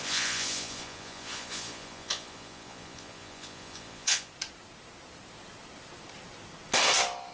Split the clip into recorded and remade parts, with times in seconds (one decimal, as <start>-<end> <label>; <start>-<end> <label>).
0.0-4.3 remade; 4.3-7.3 recorded